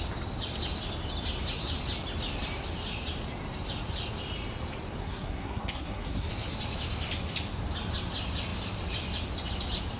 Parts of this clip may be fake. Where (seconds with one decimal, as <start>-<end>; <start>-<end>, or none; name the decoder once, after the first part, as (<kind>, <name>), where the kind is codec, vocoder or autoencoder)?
5.0-6.3 (codec, SNAC)

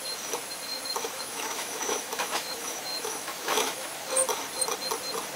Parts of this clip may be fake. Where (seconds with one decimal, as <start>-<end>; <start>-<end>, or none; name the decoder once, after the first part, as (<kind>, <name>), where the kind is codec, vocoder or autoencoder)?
0.7-3.9 (autoencoder, DAC-VAE)

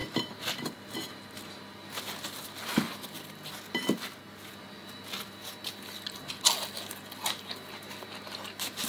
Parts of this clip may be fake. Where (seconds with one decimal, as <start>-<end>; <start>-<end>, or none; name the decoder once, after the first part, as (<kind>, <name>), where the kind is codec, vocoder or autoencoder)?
0.0-1.1 (vocoder, BigVGAN v2)

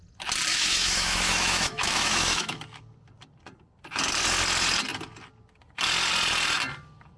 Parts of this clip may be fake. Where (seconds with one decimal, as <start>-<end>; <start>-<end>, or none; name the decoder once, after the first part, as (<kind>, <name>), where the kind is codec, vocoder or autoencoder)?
0.5-2.6 (autoencoder, DAC-VAE)

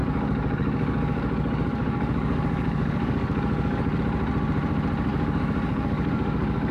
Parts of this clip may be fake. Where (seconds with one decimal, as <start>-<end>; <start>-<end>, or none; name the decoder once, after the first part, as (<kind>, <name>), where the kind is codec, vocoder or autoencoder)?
0.0-4.0 (codec, DAC); 5.1-6.7